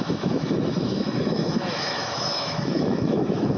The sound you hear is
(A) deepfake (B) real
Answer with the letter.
A